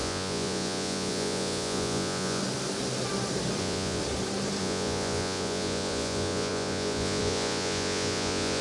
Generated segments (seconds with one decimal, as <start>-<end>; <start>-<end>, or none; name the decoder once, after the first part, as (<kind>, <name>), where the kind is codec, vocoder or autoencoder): 0.0-2.4 (vocoder, Vocos); 3.6-4.0; 4.6-8.6